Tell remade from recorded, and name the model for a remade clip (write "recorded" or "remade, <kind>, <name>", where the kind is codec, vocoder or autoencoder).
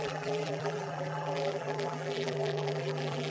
remade, vocoder, BigVGAN v2